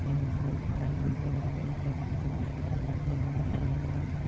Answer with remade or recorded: remade